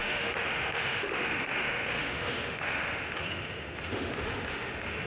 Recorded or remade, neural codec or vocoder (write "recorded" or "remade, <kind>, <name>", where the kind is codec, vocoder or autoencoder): remade, autoencoder, DAC-VAE